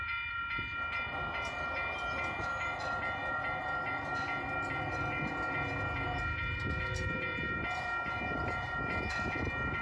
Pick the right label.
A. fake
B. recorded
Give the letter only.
B